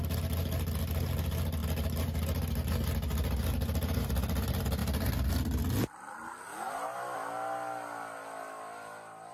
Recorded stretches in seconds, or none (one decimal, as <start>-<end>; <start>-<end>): 0.0-9.3